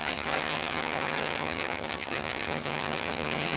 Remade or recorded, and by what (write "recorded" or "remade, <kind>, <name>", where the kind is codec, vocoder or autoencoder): remade, vocoder, HiFi-GAN